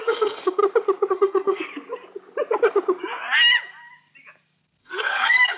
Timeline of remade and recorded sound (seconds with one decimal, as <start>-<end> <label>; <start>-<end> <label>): 0.0-0.6 remade; 0.6-1.1 recorded; 1.1-1.7 remade; 1.7-4.8 recorded; 4.8-5.6 remade